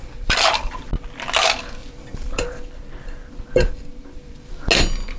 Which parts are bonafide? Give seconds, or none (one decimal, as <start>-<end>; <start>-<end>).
1.1-1.8; 4.5-5.2